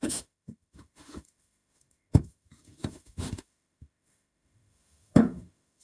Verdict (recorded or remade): remade